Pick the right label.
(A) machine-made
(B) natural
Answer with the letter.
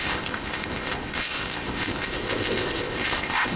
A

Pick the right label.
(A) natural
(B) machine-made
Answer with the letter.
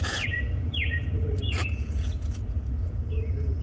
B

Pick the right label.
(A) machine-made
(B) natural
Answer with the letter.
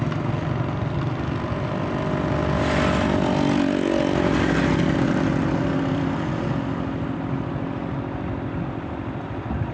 B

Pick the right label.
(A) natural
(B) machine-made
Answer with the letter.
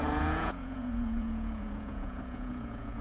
B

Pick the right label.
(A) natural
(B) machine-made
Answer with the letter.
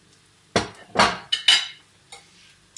A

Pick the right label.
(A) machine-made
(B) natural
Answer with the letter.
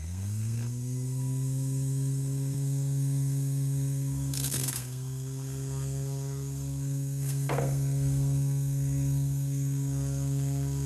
A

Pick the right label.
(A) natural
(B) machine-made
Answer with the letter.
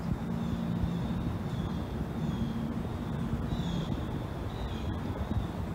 A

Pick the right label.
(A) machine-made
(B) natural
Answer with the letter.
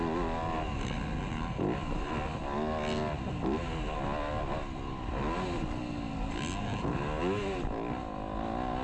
B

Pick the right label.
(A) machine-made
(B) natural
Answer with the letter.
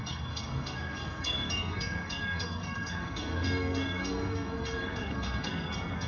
A